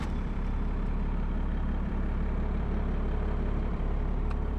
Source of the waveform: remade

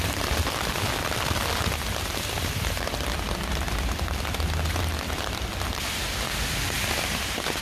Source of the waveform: remade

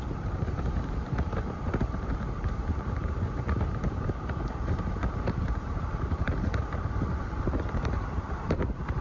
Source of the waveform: remade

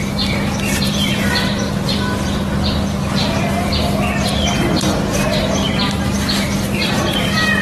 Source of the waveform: recorded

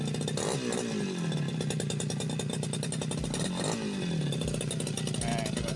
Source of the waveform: recorded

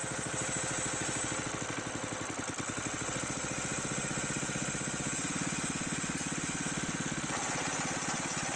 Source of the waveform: recorded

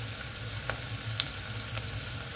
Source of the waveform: remade